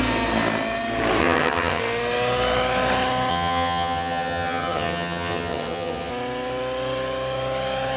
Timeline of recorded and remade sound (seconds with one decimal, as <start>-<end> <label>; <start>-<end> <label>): 0.0-1.2 recorded; 1.2-1.8 remade; 1.8-3.3 recorded; 3.3-6.1 remade; 6.1-8.0 recorded